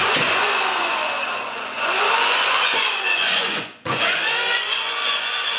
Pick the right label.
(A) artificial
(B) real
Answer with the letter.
A